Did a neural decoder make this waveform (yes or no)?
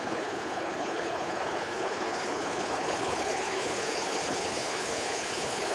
yes